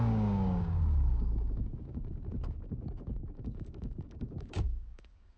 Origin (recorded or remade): remade